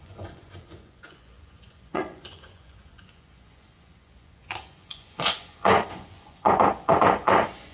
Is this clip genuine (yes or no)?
no